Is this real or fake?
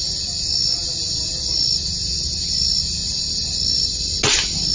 real